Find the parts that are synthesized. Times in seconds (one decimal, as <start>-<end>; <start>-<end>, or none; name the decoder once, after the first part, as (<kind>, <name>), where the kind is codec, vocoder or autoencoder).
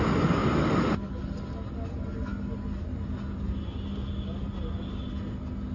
none